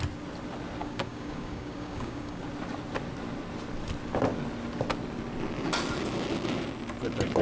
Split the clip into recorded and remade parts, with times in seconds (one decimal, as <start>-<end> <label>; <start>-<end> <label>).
0.0-0.8 recorded; 0.8-2.4 remade; 2.4-7.4 recorded